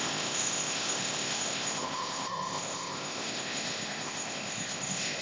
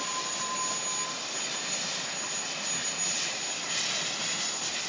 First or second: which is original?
second